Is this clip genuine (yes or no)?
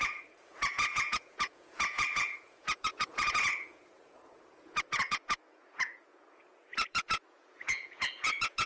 no